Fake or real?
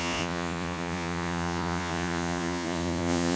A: fake